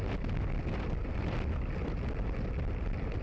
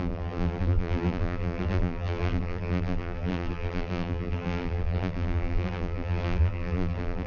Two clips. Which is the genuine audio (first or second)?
first